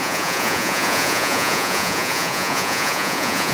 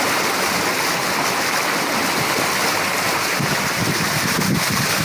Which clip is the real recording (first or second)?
second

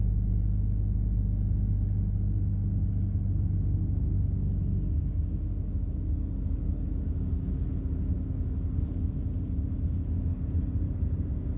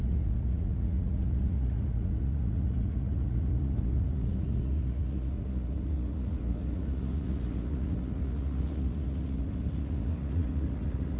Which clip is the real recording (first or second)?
first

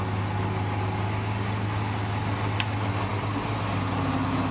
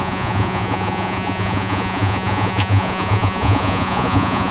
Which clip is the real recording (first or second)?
first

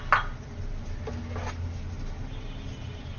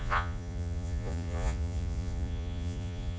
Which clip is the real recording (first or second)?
first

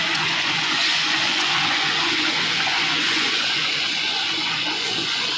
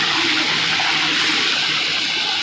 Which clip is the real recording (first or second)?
second